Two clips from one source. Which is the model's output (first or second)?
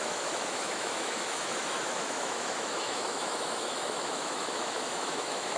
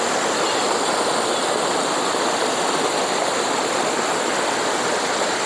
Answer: first